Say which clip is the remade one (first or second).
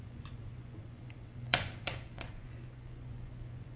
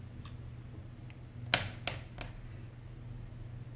first